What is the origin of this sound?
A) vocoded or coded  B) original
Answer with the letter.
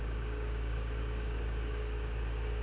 A